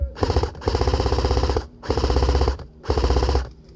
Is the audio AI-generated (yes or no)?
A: yes